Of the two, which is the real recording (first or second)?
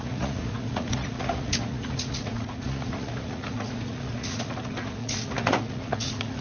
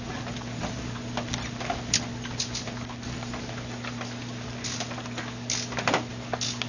second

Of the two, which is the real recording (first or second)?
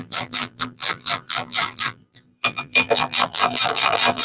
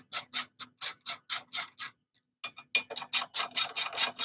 second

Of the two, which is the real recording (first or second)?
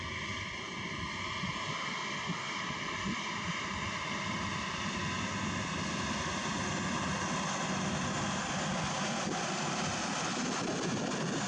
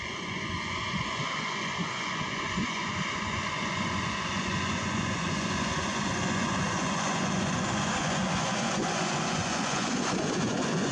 first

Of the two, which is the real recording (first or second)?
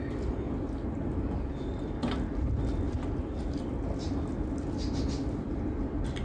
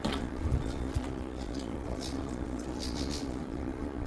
first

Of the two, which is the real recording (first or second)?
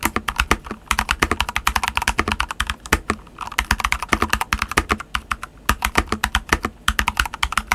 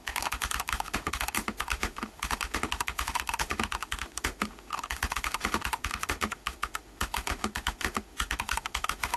first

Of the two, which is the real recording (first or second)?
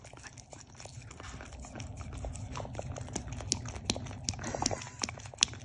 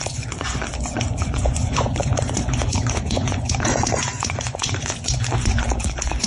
first